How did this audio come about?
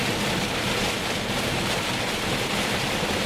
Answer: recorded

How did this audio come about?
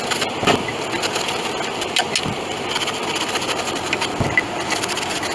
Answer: recorded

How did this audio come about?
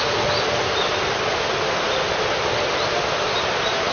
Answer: recorded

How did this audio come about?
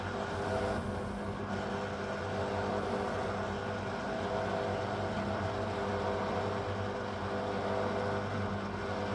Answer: recorded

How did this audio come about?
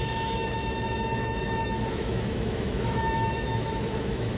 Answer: remade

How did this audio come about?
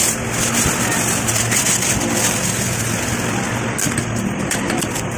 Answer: recorded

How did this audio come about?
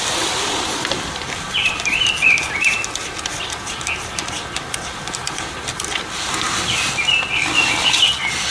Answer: recorded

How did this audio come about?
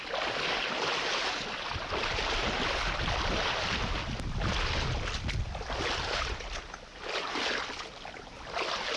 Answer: recorded